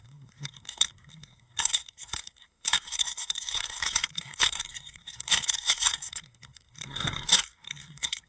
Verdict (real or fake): fake